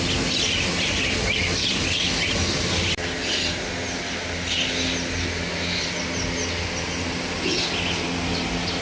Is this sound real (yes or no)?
yes